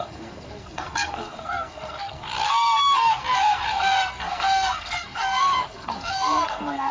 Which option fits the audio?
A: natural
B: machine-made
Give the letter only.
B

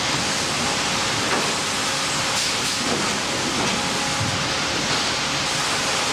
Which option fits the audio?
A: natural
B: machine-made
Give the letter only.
A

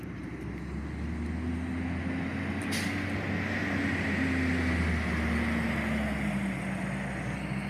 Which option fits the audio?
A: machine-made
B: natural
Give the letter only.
B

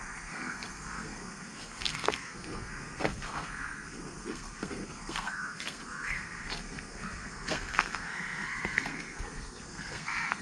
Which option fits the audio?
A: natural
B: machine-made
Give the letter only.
B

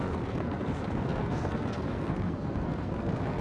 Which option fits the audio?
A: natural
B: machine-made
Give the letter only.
B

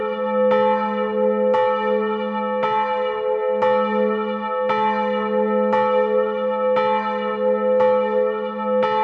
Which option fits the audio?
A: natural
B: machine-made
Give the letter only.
A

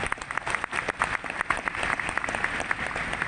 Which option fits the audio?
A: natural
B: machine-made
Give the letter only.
A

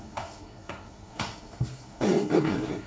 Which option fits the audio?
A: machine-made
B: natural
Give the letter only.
A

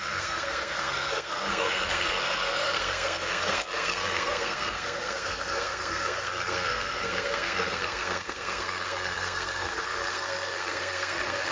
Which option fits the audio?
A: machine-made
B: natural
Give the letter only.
A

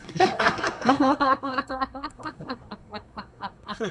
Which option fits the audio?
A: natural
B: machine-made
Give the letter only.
B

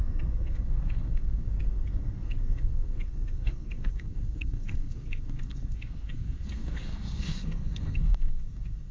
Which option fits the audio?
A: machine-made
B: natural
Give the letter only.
A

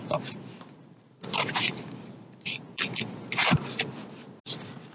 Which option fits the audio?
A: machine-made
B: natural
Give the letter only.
B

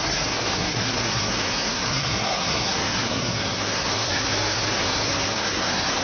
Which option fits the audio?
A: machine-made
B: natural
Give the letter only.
A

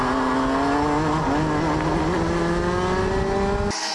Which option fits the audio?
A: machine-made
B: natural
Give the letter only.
B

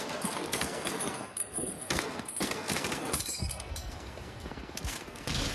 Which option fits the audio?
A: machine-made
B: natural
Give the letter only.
A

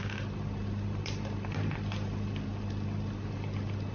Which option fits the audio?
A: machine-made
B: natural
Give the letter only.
B